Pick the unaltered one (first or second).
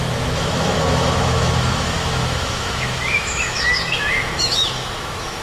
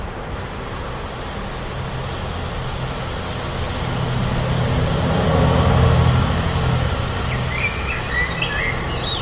second